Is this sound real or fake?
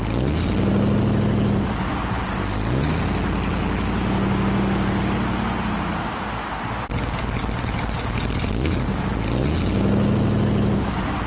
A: real